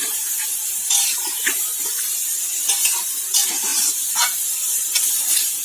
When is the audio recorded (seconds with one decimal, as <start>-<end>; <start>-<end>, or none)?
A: 0.0-5.6